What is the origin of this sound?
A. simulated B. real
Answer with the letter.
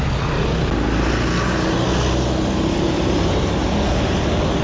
B